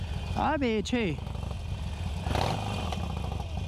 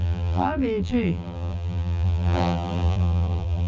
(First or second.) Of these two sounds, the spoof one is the second